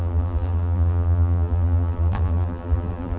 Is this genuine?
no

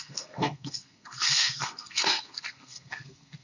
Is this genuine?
no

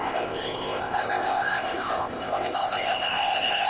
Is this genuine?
no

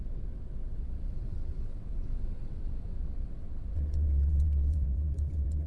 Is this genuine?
no